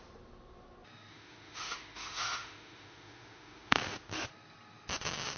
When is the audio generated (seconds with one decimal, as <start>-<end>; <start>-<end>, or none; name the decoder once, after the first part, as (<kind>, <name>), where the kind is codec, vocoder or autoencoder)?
1.1-4.3 (autoencoder, DAC-VAE)